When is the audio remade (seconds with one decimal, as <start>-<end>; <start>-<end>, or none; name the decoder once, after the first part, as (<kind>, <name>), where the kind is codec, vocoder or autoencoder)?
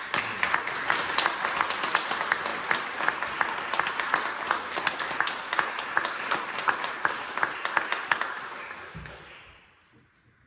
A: none